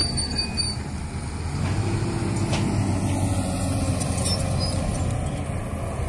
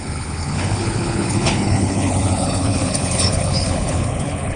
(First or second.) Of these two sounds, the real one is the first